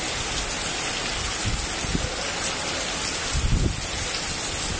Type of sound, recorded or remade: recorded